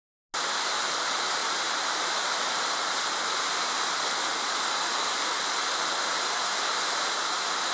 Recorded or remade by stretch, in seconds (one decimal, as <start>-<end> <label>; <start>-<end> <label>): 0.0-1.4 recorded; 1.4-3.0 remade; 3.0-4.3 recorded; 4.3-5.8 remade; 5.8-7.7 recorded